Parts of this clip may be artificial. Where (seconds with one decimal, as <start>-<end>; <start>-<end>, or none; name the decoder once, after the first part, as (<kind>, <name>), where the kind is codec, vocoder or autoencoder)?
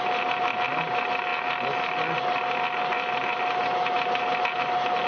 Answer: none